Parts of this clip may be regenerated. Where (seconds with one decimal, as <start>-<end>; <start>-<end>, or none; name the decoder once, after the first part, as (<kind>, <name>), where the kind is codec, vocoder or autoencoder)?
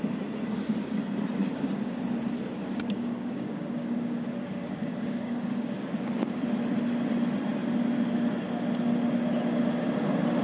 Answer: 1.4-2.0 (codec, DAC); 2.6-6.4